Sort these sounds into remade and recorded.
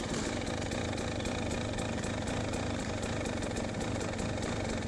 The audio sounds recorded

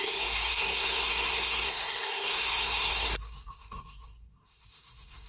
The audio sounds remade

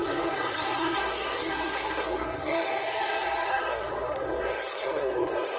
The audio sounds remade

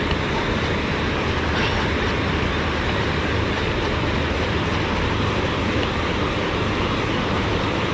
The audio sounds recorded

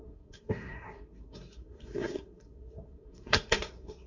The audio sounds remade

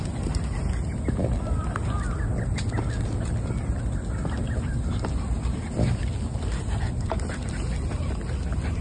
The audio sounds recorded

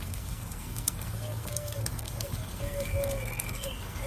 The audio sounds remade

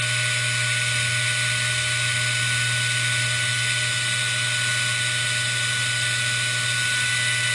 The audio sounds recorded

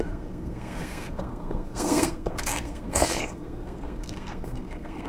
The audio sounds remade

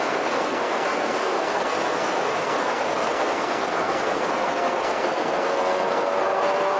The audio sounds remade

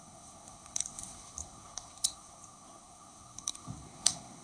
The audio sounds remade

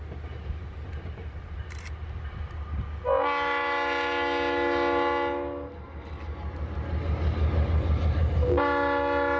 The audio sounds recorded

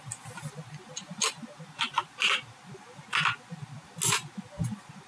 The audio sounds recorded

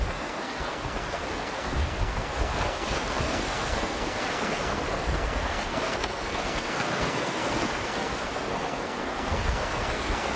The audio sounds remade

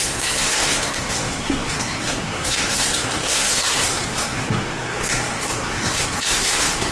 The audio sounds remade